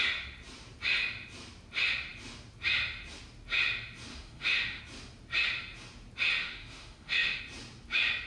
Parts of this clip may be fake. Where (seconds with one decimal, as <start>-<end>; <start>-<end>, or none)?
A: 4.1-4.8; 6.4-7.4